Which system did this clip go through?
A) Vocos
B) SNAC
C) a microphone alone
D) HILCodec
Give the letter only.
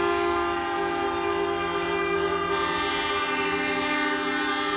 C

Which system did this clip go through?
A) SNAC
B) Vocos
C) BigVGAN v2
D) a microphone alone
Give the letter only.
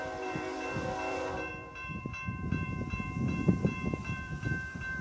C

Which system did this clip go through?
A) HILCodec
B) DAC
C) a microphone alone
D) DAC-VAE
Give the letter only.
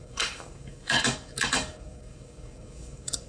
B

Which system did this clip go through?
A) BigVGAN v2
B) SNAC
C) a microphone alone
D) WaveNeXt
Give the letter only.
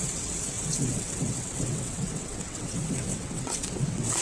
D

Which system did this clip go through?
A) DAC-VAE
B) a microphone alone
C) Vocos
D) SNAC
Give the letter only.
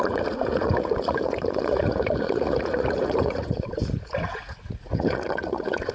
C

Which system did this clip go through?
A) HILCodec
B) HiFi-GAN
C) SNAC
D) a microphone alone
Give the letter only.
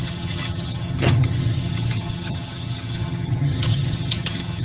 B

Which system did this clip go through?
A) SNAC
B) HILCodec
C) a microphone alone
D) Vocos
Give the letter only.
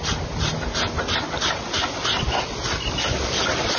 C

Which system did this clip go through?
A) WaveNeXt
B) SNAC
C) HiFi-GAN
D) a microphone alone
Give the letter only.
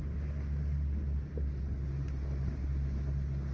D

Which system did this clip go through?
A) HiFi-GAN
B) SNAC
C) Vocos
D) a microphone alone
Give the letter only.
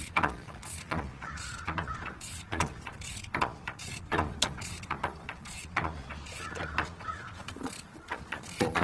C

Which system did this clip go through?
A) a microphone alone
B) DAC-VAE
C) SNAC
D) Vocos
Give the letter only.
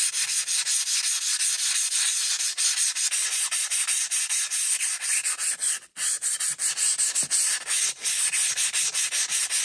A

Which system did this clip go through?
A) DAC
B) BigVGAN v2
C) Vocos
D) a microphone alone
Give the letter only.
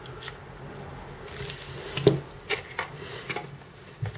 D